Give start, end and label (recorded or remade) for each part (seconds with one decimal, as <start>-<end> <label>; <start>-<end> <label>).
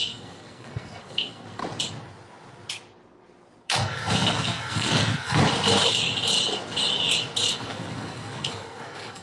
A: 0.0-1.6 remade; 1.6-3.6 recorded; 3.6-5.4 remade; 5.4-7.5 recorded; 7.5-9.2 remade